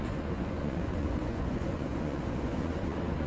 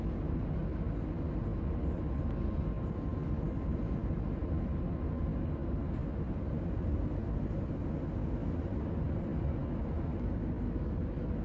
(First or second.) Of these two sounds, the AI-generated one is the first